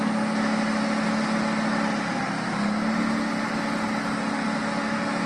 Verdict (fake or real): real